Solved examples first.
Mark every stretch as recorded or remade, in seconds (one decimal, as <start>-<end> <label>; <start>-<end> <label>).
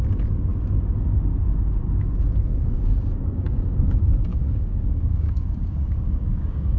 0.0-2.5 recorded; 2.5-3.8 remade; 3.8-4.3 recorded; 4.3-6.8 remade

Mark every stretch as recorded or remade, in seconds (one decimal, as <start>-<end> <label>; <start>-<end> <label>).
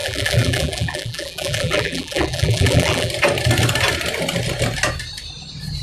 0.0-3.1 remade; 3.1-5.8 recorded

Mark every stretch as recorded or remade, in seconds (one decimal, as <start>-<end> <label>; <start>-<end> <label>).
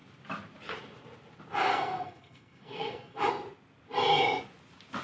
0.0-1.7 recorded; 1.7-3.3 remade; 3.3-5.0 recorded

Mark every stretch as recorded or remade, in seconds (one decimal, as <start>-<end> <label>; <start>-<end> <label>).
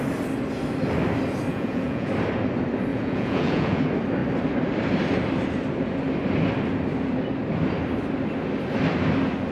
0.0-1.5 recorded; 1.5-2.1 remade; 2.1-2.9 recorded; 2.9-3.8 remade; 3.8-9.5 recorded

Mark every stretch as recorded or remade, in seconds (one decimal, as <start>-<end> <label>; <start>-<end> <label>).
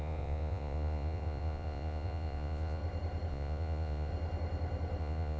0.0-2.8 remade; 2.8-3.3 recorded; 3.3-4.1 remade; 4.1-5.0 recorded; 5.0-5.4 remade